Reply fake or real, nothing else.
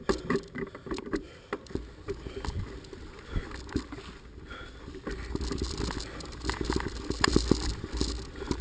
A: real